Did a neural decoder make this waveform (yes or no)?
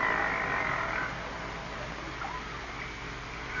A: no